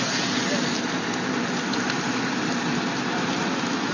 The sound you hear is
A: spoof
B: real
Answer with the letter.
B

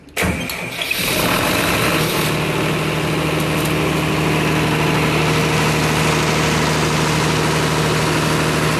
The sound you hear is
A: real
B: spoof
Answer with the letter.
A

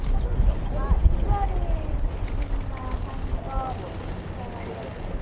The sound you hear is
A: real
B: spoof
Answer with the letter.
A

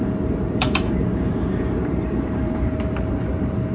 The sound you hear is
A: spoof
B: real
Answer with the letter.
A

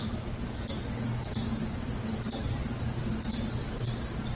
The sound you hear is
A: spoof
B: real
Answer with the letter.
B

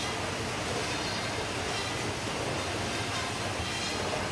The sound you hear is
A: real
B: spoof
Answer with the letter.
A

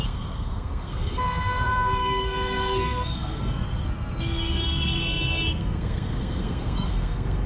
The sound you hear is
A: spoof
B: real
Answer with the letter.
A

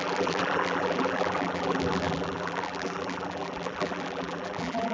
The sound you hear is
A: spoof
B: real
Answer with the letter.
A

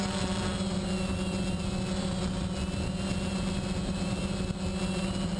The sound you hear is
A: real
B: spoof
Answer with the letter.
A